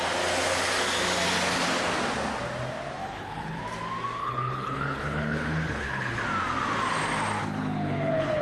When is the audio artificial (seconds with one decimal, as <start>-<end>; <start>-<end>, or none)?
3.0-3.6; 4.2-6.2; 7.4-8.4